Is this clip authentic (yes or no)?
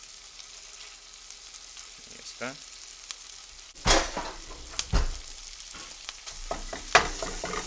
yes